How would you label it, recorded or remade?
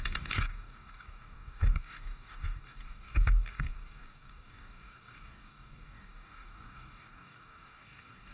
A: remade